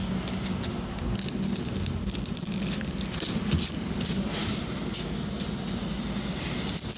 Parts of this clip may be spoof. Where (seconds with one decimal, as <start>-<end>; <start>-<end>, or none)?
none